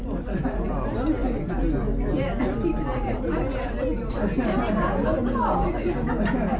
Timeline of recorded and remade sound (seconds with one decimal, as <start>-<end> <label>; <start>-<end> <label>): 0.0-6.6 recorded